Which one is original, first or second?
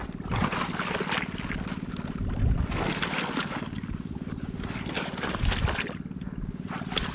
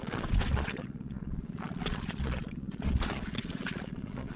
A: first